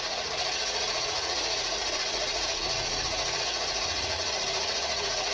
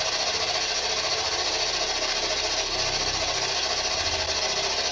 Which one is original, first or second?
second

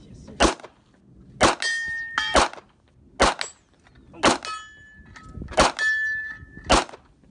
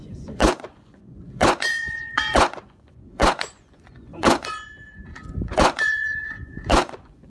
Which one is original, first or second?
first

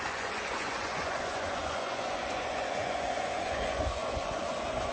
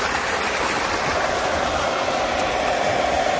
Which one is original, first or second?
second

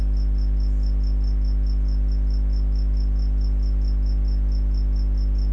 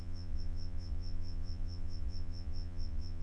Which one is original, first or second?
first